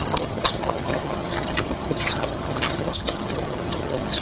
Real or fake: fake